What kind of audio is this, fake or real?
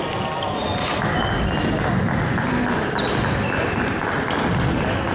real